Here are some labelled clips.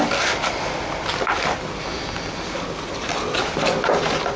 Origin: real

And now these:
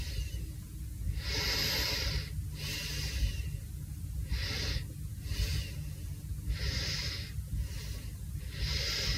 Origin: real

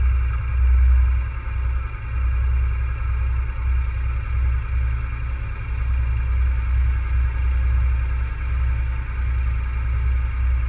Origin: real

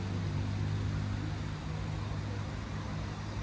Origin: real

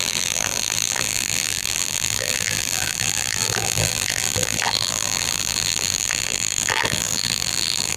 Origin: fake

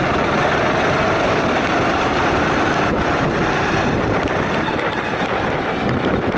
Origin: fake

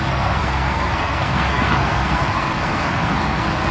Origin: fake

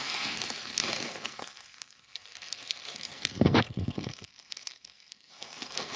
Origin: fake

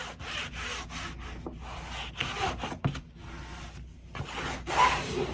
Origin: real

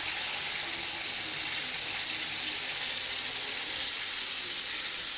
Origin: real